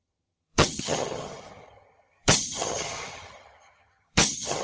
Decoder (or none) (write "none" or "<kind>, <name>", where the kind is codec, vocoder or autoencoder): vocoder, HiFi-GAN